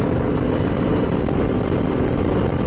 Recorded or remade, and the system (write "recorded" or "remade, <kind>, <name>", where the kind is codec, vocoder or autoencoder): recorded